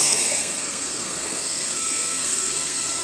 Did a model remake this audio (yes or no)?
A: yes